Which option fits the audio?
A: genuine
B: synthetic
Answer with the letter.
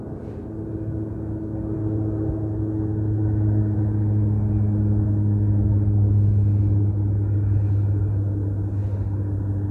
A